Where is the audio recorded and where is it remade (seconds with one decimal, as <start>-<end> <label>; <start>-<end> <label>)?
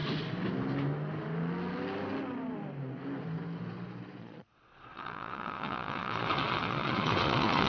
0.0-4.2 recorded; 4.2-7.7 remade